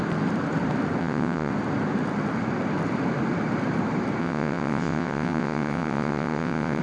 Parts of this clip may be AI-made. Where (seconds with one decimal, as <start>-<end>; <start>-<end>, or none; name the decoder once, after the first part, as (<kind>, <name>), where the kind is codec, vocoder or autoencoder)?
1.0-1.5 (vocoder, WaveNeXt); 4.2-6.8